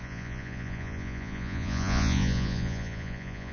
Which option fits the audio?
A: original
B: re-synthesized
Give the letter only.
B